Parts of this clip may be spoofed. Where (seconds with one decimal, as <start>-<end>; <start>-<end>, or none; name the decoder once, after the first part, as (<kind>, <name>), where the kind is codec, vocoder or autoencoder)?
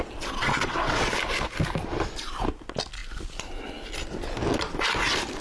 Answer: 0.4-1.1 (vocoder, WaveNeXt)